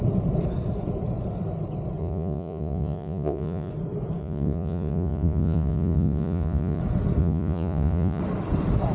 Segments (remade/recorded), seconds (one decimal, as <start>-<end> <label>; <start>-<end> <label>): 0.0-2.0 recorded; 2.0-3.7 remade; 3.7-4.2 recorded; 4.2-6.8 remade; 6.8-7.2 recorded; 7.2-8.2 remade; 8.2-8.9 recorded